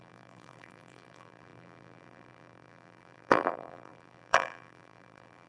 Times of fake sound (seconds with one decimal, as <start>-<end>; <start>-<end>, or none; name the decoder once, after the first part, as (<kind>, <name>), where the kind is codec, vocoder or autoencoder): 0.0-5.5 (vocoder, BigVGAN v2)